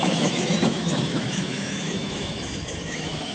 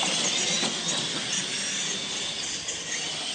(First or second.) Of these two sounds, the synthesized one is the first